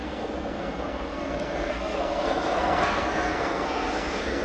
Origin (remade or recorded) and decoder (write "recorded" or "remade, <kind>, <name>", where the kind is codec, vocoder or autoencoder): remade, codec, SNAC